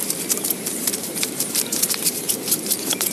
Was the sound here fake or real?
fake